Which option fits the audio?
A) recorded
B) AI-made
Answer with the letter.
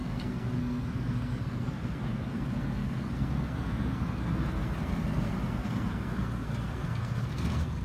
B